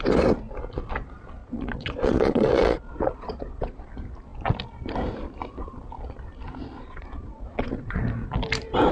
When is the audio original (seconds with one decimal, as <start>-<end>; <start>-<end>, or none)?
0.0-1.4; 3.9-6.8; 8.0-8.9